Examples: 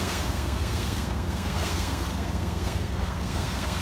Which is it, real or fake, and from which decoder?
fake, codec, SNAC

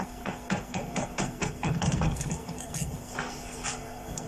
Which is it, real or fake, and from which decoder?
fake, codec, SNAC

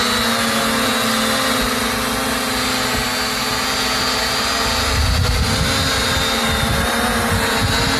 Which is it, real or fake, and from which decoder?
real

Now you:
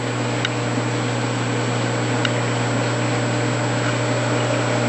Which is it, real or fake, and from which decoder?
real